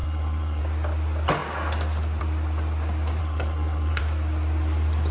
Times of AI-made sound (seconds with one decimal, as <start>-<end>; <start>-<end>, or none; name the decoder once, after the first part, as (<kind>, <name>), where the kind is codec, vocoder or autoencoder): 0.0-0.6 (codec, SNAC); 3.2-4.0